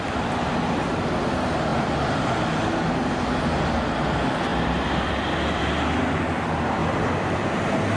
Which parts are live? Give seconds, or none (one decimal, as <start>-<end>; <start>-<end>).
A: 0.0-4.5; 5.7-6.8; 7.5-8.0